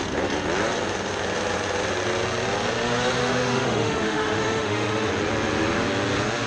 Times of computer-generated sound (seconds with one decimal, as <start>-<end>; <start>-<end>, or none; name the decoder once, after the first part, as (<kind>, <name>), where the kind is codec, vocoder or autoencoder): 3.2-5.1 (autoencoder, DAC-VAE)